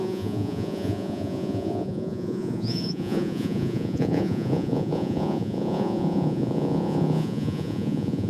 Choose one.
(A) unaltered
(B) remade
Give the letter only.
B